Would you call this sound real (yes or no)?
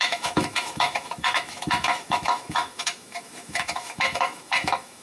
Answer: no